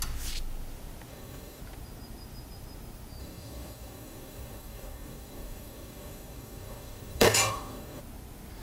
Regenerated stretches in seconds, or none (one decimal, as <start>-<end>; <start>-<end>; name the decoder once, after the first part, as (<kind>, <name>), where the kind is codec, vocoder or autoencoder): 1.1-1.6 (codec, DAC); 3.2-8.0